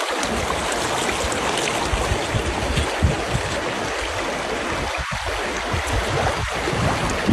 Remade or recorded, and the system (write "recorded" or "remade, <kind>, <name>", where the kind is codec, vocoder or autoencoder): recorded